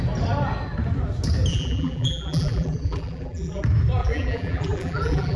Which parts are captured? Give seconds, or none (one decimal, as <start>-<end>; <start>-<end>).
0.0-1.5; 3.6-4.0